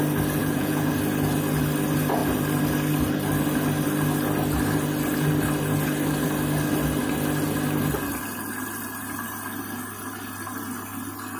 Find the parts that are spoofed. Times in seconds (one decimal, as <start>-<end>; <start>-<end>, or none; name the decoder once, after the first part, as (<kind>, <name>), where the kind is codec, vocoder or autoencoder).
0.4-0.9 (vocoder, Vocos)